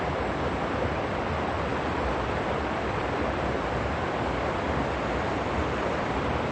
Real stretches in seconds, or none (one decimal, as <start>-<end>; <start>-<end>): 0.0-6.5